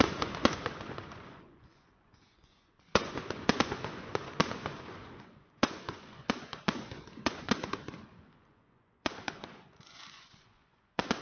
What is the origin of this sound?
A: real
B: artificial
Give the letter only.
B